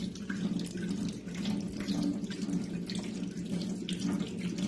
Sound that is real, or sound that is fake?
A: real